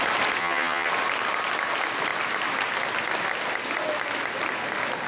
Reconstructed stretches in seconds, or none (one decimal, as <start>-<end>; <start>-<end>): 0.4-0.9